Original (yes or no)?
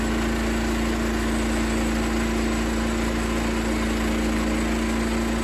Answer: yes